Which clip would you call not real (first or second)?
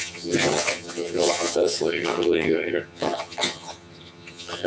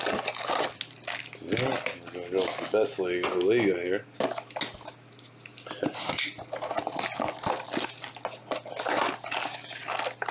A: first